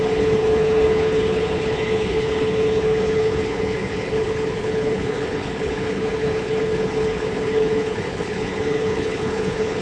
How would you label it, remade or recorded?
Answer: remade